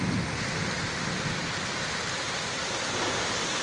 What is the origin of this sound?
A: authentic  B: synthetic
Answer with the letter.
A